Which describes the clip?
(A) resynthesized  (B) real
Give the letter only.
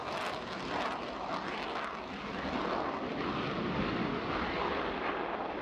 B